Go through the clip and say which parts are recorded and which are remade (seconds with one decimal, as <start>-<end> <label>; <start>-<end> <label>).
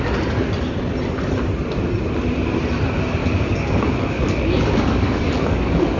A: 0.0-3.2 recorded; 3.2-6.0 remade